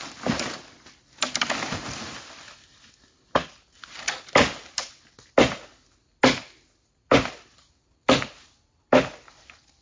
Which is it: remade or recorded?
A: recorded